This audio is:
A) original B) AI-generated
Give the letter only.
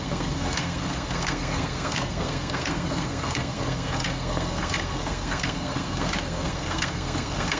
B